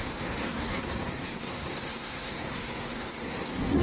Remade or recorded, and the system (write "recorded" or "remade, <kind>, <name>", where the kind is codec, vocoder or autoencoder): remade, codec, SNAC